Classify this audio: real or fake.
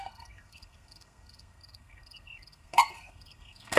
fake